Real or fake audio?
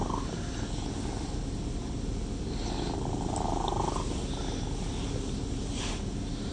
real